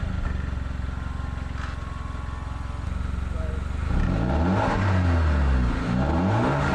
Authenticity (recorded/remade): recorded